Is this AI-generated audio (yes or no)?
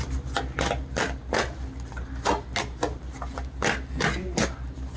no